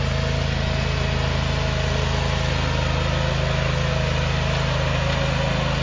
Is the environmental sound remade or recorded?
recorded